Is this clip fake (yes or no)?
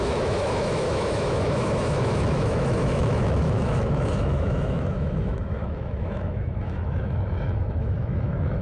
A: yes